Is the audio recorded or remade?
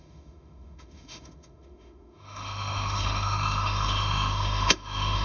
remade